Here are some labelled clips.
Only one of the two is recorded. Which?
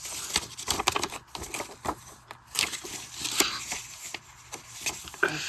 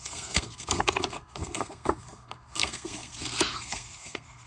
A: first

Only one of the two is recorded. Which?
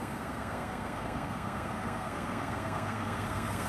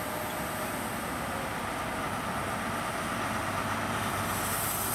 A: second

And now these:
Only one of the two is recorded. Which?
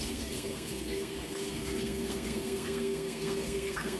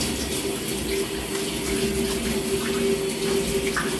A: second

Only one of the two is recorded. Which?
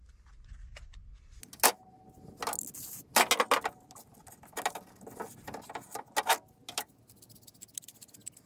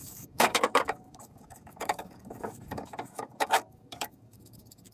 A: first